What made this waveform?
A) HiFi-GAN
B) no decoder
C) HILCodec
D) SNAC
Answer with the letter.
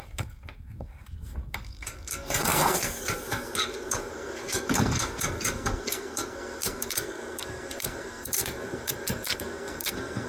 D